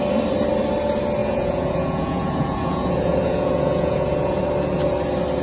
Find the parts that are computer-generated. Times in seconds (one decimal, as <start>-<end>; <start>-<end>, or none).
1.2-4.4